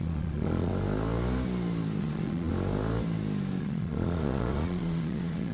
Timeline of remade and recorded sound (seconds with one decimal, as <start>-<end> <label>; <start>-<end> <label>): 0.0-0.7 remade; 0.7-2.0 recorded; 2.0-2.5 remade; 2.5-3.6 recorded; 3.6-5.5 remade